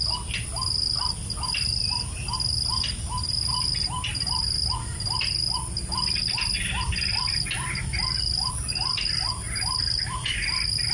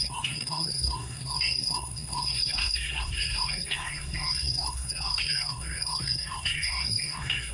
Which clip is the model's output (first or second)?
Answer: second